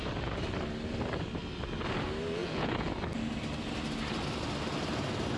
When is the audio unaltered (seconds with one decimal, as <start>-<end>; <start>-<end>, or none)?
0.0-2.4; 2.9-5.4